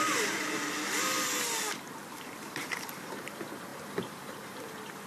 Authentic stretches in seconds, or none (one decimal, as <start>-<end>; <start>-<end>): 0.0-2.0; 3.3-3.7